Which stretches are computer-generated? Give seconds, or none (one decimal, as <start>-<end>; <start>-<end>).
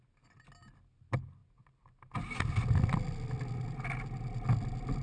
none